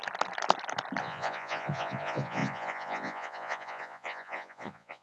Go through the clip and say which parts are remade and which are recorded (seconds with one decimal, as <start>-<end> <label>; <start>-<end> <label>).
0.0-1.0 recorded; 1.0-5.0 remade